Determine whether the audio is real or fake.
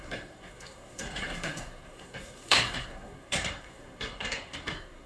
fake